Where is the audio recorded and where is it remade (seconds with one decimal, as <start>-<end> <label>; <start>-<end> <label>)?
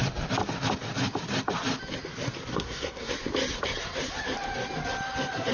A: 0.0-2.5 recorded; 2.5-3.1 remade; 3.1-5.5 recorded